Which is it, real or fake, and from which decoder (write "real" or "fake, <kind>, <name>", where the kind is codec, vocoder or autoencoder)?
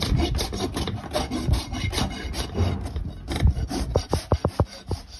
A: real